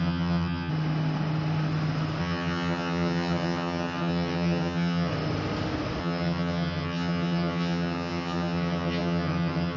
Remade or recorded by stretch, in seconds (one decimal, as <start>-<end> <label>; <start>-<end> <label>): 0.0-0.7 remade; 0.7-2.2 recorded; 2.2-5.1 remade; 5.1-6.0 recorded; 6.0-9.8 remade